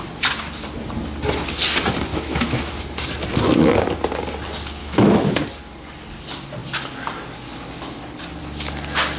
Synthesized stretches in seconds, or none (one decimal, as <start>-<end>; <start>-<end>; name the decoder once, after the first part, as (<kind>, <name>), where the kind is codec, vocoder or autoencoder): 2.1-2.7 (autoencoder, DAC-VAE); 4.8-5.3